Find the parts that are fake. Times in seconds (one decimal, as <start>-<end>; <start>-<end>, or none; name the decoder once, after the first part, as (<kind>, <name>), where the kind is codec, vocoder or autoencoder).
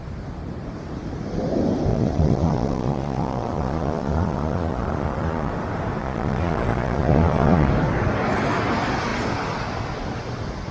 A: 1.9-5.5 (vocoder, Vocos); 6.0-7.7